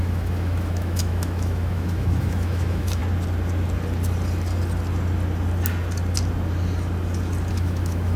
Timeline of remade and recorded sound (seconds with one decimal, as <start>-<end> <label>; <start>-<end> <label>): 0.0-3.0 remade; 3.0-7.5 recorded; 7.5-8.2 remade